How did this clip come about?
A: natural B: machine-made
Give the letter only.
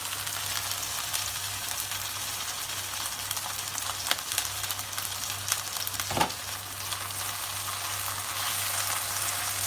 A